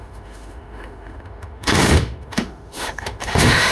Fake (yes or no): yes